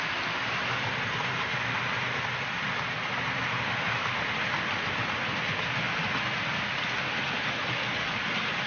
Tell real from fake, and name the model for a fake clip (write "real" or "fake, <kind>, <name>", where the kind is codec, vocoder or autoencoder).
real